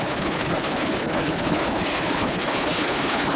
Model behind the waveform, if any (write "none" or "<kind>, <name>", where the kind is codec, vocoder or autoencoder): codec, HILCodec